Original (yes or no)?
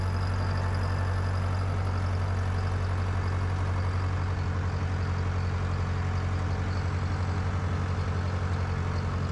yes